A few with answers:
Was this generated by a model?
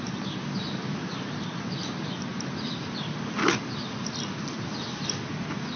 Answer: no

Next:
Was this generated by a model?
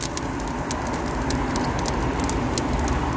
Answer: no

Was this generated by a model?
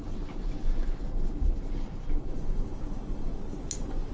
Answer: no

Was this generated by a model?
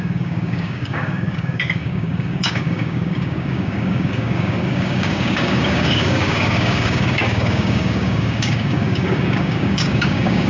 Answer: yes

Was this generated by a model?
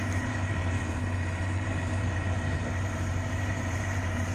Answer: yes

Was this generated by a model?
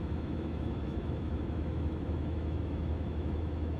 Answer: yes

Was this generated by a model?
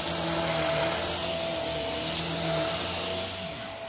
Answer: no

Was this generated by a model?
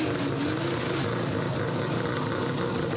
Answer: no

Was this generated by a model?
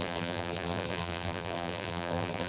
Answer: yes